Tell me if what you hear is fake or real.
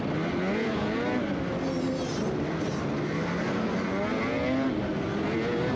real